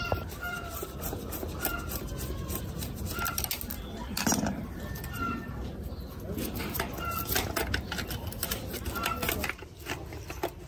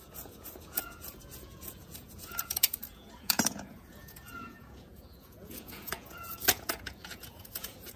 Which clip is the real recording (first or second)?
first